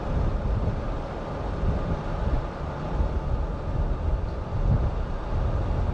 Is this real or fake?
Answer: real